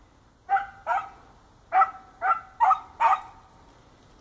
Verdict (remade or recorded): recorded